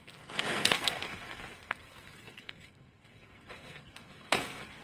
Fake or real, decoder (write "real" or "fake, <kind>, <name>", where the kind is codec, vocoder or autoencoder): fake, codec, SNAC